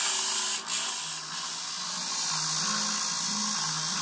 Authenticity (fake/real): real